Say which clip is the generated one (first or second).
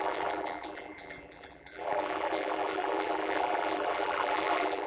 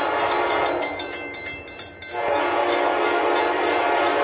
first